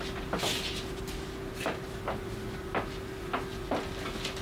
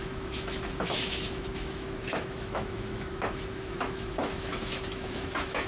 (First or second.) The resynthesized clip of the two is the second